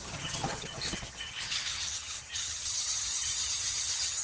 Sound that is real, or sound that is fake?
fake